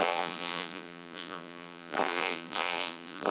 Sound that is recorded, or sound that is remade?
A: remade